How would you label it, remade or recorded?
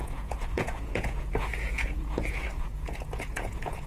remade